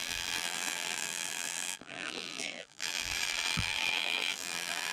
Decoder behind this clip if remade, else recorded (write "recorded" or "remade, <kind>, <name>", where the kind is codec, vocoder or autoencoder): remade, vocoder, BigVGAN v2